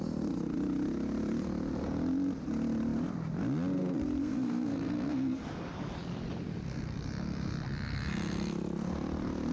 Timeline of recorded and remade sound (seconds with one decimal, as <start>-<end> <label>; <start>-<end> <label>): 0.0-4.2 recorded; 4.2-5.4 remade; 5.4-9.5 recorded